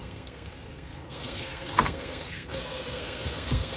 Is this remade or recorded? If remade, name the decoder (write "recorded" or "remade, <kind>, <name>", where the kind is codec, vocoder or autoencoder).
remade, codec, SNAC